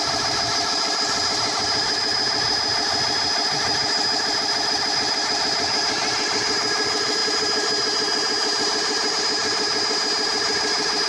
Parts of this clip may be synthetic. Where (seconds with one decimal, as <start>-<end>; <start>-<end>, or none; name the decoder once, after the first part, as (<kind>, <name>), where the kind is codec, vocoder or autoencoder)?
none